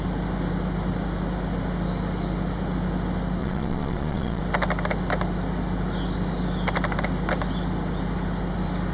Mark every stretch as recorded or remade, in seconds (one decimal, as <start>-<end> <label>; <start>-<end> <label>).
0.0-3.4 recorded; 3.4-4.4 remade; 4.4-8.9 recorded